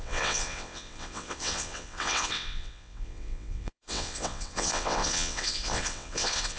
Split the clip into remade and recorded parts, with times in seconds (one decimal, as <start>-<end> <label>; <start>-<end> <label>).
0.0-6.6 remade